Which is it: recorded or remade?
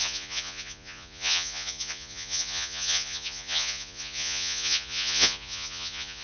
remade